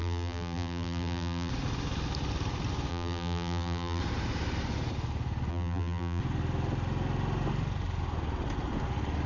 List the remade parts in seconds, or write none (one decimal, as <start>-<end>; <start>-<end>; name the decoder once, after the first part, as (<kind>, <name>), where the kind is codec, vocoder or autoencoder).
0.0-1.5 (vocoder, BigVGAN v2); 2.9-4.0; 5.5-6.2